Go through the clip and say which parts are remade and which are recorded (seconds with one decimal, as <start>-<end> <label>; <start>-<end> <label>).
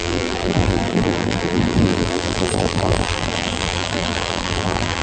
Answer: 0.0-5.0 remade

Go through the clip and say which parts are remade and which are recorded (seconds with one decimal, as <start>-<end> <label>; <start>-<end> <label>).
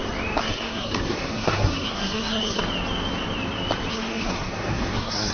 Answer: 0.0-0.4 recorded; 0.4-2.6 remade; 2.6-3.9 recorded; 3.9-5.3 remade